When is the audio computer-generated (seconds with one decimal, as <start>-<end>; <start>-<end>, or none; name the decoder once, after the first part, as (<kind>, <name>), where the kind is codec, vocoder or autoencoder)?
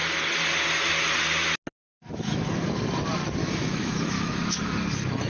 1.8-2.5 (autoencoder, DAC-VAE); 3.4-4.8